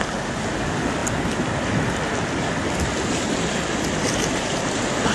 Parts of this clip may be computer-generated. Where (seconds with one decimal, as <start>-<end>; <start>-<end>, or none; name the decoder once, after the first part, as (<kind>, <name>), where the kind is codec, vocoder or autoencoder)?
none

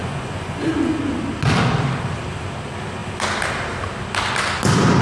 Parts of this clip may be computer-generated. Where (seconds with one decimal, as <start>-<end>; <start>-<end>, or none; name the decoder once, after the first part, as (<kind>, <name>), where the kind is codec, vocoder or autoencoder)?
0.0-0.7 (vocoder, Vocos)

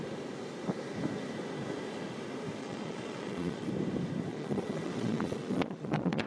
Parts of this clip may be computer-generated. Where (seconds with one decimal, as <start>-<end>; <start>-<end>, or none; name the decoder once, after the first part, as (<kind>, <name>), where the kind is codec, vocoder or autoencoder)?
2.6-3.7 (vocoder, Vocos); 4.3-6.3